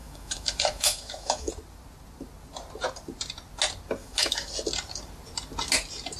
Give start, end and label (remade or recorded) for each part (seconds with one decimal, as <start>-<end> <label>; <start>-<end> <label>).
0.0-1.5 remade; 1.5-4.0 recorded; 4.0-4.5 remade; 4.5-6.2 recorded